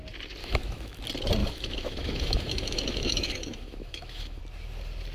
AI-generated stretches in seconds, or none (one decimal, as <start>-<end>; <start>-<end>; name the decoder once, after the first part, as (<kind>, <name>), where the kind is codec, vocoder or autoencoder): 0.4-1.0 (autoencoder, DAC-VAE); 1.4-4.4